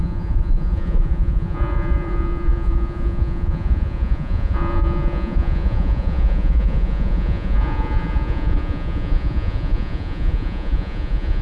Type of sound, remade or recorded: remade